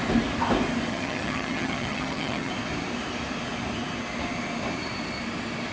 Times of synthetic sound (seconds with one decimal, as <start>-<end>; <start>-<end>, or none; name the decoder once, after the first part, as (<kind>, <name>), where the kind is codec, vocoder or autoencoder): 0.9-2.5 (vocoder, HiFi-GAN)